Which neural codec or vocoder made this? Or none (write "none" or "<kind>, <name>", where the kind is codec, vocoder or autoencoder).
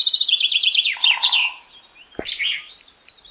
none